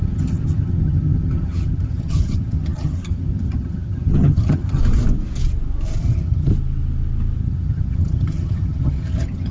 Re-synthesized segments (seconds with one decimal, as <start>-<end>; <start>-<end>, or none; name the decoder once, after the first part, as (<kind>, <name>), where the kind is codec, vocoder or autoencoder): 0.0-4.8 (vocoder, HiFi-GAN); 6.0-6.5; 7.4-9.5